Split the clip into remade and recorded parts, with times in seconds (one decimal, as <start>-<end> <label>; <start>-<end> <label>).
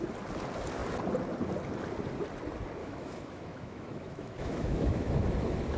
0.0-2.8 recorded; 2.8-5.1 remade; 5.1-5.8 recorded